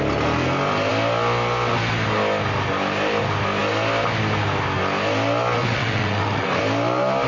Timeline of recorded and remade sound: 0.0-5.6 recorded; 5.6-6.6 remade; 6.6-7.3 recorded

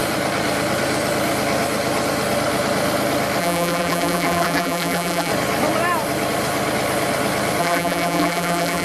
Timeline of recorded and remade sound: 0.0-3.4 recorded; 3.4-5.3 remade; 5.3-7.6 recorded; 7.6-8.8 remade

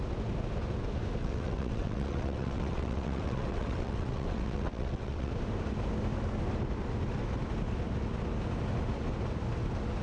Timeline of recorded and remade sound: 0.0-1.2 recorded; 1.2-5.3 remade; 5.3-10.0 recorded